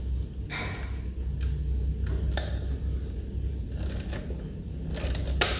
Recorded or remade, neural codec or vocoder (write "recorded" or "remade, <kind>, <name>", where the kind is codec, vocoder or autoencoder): recorded